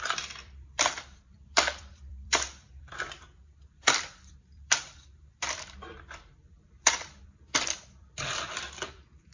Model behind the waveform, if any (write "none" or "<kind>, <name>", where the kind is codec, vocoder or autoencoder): vocoder, BigVGAN v2